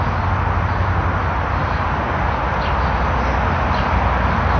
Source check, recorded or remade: recorded